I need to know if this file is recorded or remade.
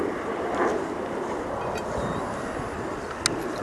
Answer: recorded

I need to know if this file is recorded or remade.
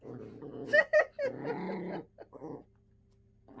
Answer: recorded